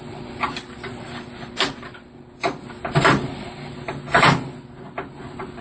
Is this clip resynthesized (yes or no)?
no